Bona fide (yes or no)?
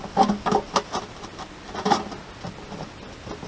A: yes